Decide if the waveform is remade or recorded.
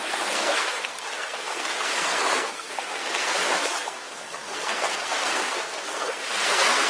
remade